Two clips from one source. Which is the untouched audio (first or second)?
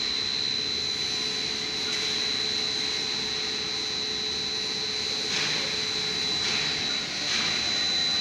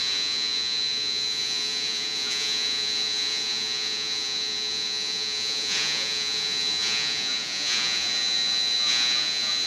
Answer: first